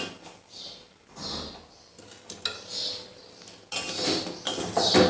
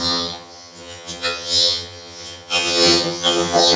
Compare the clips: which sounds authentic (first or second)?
first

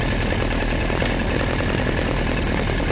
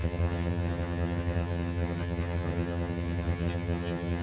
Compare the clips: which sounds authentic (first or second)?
first